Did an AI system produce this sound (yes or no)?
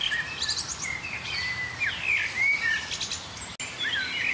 no